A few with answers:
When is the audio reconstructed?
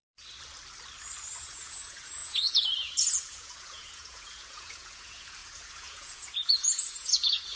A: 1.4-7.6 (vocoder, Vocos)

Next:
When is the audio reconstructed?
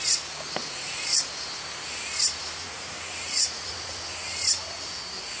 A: 0.6-1.3 (vocoder, Vocos); 2.6-4.0